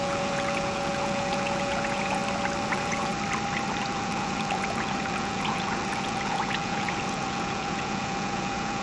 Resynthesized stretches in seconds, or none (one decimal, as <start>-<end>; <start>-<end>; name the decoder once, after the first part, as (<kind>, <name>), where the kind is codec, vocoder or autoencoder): 0.0-2.2 (vocoder, Vocos); 2.7-3.1; 3.8-8.8